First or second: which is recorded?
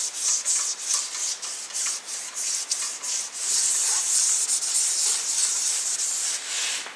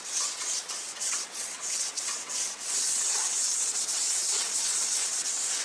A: first